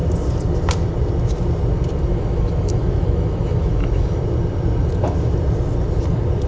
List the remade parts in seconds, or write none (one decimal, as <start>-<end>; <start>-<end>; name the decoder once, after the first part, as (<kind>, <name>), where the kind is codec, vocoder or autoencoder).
2.1-4.2 (autoencoder, DAC-VAE)